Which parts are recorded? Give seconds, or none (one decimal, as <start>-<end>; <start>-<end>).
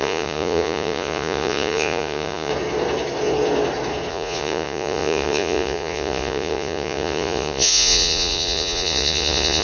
2.5-4.1